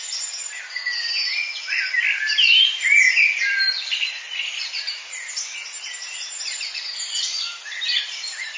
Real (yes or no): yes